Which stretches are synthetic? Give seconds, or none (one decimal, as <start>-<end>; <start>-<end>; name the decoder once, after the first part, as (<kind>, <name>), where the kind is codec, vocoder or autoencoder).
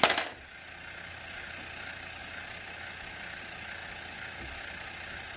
none